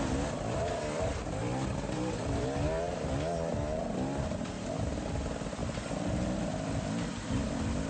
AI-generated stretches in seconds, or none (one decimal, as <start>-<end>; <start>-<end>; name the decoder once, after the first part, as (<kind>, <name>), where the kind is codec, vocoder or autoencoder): none